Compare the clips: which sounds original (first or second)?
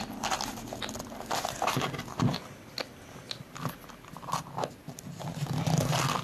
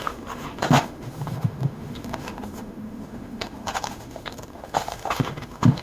first